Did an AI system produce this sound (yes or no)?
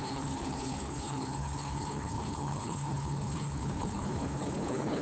yes